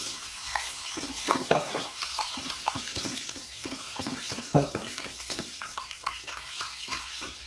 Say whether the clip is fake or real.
fake